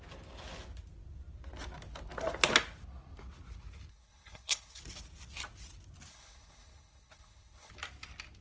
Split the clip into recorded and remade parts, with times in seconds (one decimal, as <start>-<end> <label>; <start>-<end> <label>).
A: 0.0-3.9 recorded; 3.9-4.8 remade; 4.8-6.1 recorded; 6.1-7.7 remade; 7.7-8.4 recorded